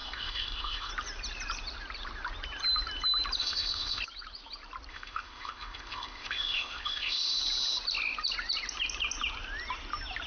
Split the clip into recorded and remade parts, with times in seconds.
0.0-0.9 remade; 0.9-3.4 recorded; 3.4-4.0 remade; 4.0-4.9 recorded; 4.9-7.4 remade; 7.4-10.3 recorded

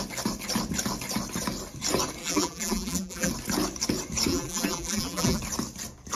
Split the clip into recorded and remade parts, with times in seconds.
0.0-2.2 recorded; 2.2-3.3 remade; 3.3-4.3 recorded; 4.3-5.4 remade; 5.4-6.2 recorded